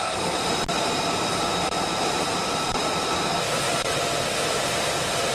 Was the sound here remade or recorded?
remade